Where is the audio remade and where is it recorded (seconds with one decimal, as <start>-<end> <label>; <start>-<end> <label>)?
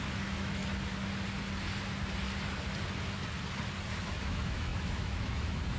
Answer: 0.0-0.6 remade; 0.6-4.1 recorded; 4.1-5.8 remade